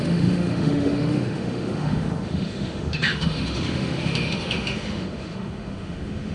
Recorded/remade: remade